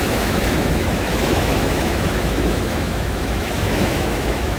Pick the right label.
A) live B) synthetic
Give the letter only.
B